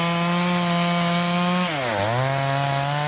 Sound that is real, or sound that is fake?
real